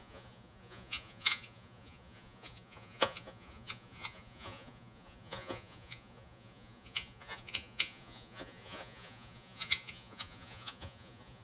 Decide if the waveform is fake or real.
fake